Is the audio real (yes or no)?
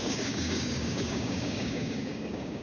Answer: no